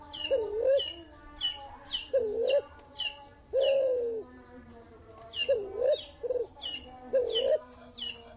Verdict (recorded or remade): recorded